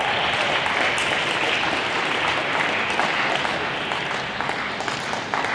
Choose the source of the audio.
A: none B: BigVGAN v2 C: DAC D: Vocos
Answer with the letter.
A